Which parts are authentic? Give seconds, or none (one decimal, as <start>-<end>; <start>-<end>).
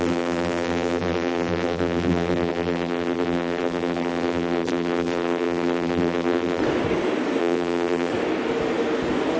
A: 6.6-7.4; 8.1-9.4